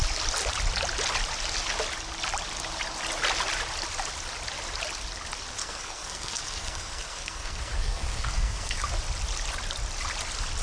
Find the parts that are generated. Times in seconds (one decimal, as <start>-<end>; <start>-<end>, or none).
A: 5.6-8.9